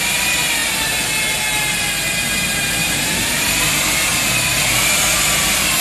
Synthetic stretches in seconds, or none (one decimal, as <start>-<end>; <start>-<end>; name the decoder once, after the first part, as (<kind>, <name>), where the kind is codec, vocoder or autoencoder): 0.0-0.6 (vocoder, BigVGAN v2); 2.8-5.8